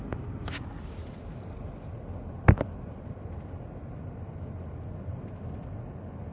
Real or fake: real